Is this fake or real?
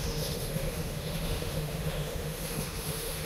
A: fake